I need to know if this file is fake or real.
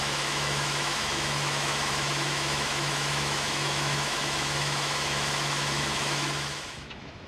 fake